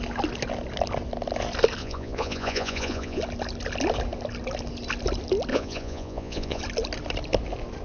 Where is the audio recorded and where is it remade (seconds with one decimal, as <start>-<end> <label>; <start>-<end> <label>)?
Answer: 0.0-1.8 recorded; 1.8-3.2 remade; 3.2-5.5 recorded; 5.5-6.6 remade; 6.6-7.8 recorded